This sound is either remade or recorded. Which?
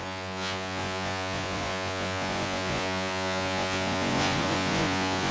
remade